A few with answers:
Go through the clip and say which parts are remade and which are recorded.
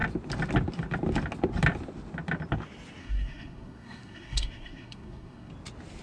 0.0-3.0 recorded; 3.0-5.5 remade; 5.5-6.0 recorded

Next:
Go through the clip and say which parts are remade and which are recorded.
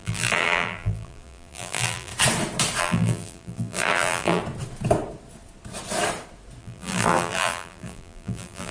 0.0-2.1 remade; 2.1-2.8 recorded; 2.8-4.4 remade; 4.4-6.6 recorded; 6.6-8.7 remade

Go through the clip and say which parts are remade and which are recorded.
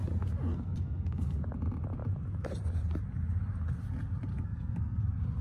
0.0-0.5 recorded; 0.5-1.4 remade; 1.4-4.3 recorded; 4.3-5.0 remade; 5.0-5.4 recorded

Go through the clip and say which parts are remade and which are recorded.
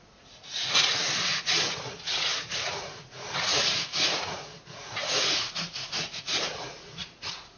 0.0-7.6 remade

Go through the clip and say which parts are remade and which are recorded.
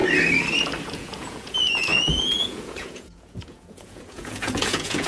0.0-0.9 recorded; 0.9-5.1 remade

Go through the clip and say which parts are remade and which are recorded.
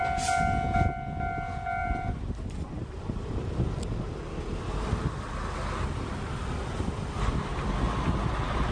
0.0-1.8 recorded; 1.8-3.0 remade; 3.0-8.7 recorded